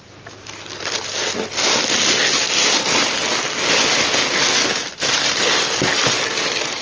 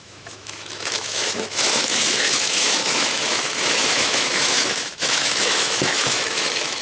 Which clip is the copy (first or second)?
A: second